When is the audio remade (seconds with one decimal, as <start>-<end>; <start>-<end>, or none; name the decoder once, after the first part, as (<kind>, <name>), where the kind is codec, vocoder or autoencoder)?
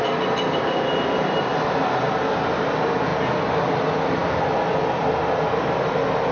none